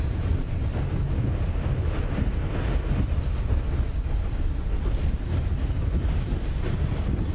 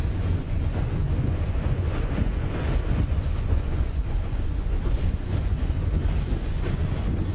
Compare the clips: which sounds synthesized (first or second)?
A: second